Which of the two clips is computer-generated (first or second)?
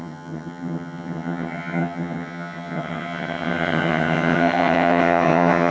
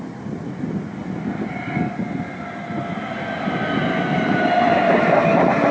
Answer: first